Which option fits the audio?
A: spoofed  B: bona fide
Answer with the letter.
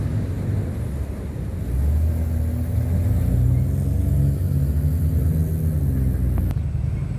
B